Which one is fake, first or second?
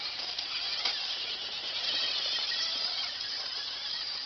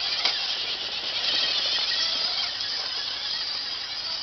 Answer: first